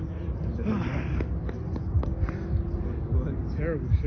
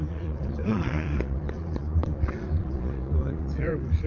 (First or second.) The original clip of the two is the first